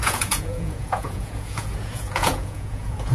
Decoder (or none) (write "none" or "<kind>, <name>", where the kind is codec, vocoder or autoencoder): vocoder, Vocos